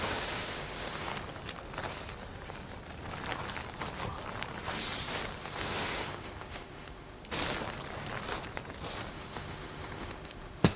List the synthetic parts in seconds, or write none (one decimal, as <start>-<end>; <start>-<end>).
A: 0.0-1.1; 5.4-7.2; 9.1-10.8